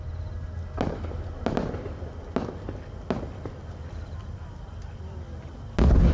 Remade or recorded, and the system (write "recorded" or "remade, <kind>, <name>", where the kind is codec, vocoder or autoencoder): recorded